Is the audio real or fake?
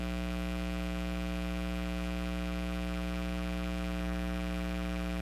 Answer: real